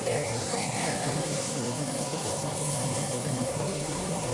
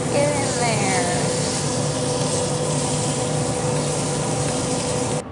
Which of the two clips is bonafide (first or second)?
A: second